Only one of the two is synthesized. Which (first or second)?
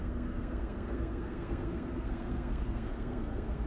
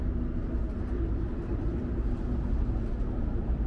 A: first